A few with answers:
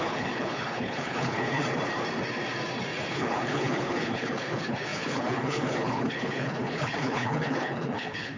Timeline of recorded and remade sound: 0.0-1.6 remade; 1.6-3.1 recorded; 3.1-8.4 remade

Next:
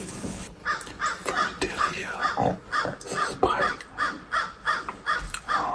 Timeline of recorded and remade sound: 0.0-0.6 remade; 0.6-1.7 recorded; 1.7-2.2 remade; 2.2-5.7 recorded

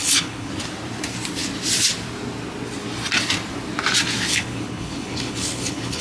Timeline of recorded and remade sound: 0.0-0.5 remade; 0.5-4.3 recorded; 4.3-6.0 remade

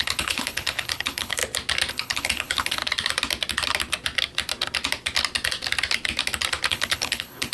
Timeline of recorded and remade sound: 0.0-1.4 remade; 1.4-1.9 recorded; 1.9-2.8 remade; 2.8-6.7 recorded; 6.7-7.5 remade

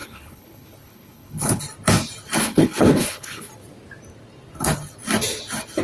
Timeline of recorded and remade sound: 0.0-1.6 remade; 1.6-2.4 recorded; 2.4-3.5 remade; 3.5-5.8 recorded

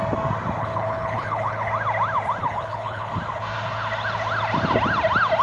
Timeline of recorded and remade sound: 0.0-0.6 recorded; 0.6-1.7 remade; 1.7-2.4 recorded; 2.4-3.1 remade; 3.1-5.4 recorded